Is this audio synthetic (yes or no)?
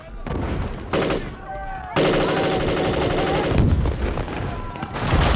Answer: no